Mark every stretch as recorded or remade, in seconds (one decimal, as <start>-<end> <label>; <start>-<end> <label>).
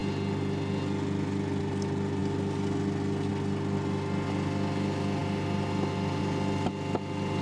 0.0-7.4 recorded